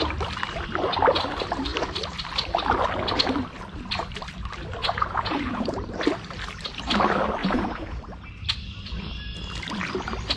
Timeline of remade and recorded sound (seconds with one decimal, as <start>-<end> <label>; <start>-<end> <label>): 0.0-4.8 recorded; 4.8-5.7 remade; 5.7-7.4 recorded; 7.4-8.0 remade; 8.0-10.4 recorded